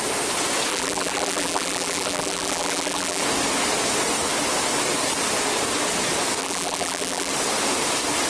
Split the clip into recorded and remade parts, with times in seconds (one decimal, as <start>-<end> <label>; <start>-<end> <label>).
0.0-0.7 recorded; 0.7-3.2 remade; 3.2-6.4 recorded; 6.4-7.3 remade; 7.3-8.3 recorded